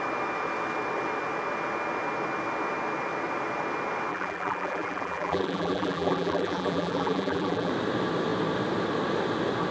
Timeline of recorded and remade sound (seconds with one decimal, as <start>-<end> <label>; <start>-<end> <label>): 0.0-4.1 recorded; 4.1-7.7 remade; 7.7-9.7 recorded